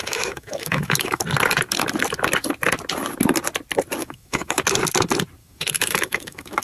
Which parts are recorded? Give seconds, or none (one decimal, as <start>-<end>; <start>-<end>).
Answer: 1.2-4.0; 4.6-5.4